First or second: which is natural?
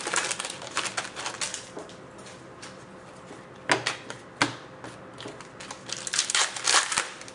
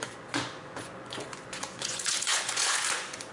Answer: first